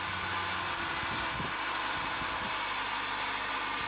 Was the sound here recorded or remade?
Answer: recorded